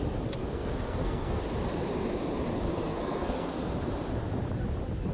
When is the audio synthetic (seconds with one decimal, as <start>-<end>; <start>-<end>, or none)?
0.4-1.4; 2.7-3.6